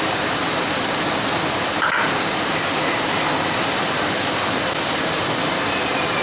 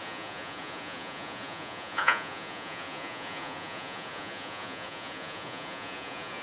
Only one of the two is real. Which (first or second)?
first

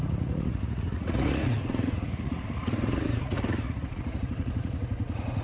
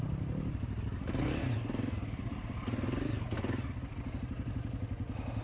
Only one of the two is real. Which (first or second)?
second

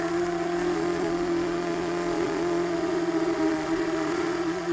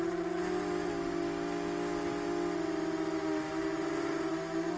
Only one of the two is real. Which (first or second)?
second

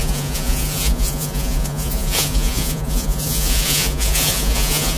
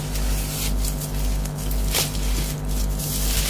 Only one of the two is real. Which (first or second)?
second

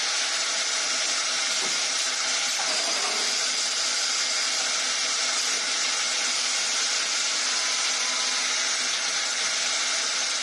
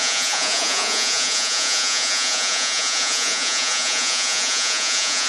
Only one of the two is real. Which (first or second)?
first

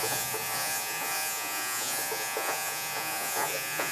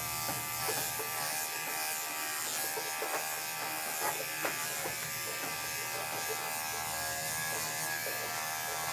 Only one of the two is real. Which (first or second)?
second